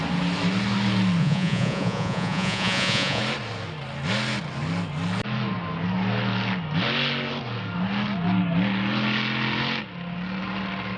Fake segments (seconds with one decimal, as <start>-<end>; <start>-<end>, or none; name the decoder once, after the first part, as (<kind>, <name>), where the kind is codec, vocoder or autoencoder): 1.2-3.2 (vocoder, Vocos)